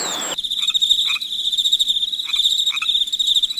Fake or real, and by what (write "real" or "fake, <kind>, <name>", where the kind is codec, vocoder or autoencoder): real